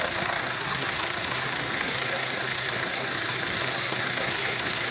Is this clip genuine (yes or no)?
no